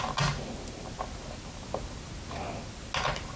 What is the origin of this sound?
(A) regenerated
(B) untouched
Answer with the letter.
B